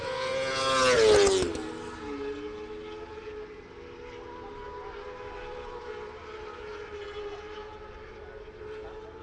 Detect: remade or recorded recorded